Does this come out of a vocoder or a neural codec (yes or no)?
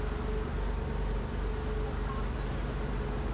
no